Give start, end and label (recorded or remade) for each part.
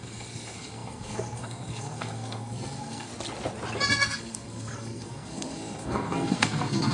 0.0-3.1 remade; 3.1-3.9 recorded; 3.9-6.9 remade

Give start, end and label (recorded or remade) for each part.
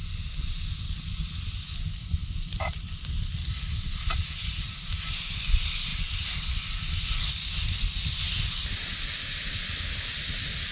0.0-10.7 recorded